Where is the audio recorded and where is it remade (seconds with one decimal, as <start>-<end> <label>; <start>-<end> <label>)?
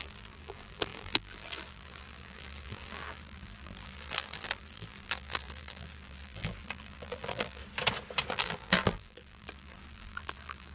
0.0-7.6 remade; 7.6-8.3 recorded; 8.3-10.7 remade